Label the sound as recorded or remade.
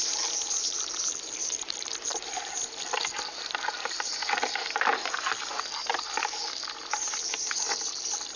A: remade